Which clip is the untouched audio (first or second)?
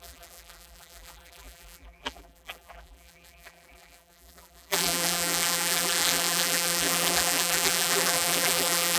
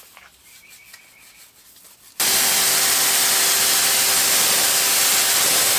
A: second